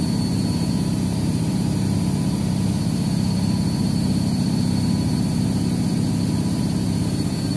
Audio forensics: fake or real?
fake